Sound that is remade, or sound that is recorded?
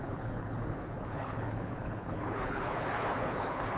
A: remade